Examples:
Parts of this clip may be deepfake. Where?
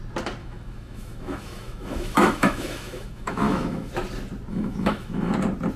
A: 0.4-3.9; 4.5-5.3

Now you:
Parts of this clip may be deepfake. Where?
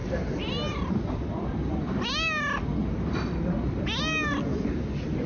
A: none